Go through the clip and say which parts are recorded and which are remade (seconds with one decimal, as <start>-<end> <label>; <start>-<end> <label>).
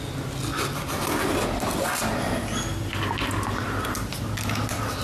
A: 0.0-5.0 recorded